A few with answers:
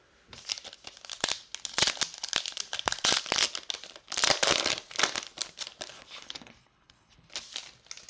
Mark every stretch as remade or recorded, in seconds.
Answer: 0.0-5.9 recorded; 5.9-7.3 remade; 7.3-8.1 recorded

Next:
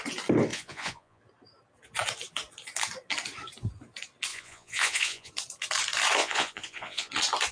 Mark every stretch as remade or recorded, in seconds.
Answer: 0.0-0.5 recorded; 0.5-1.2 remade; 1.2-4.3 recorded; 4.3-5.3 remade; 5.3-6.2 recorded; 6.2-7.1 remade; 7.1-7.5 recorded